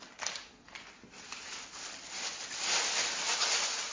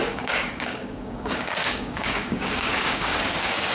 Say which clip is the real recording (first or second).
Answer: first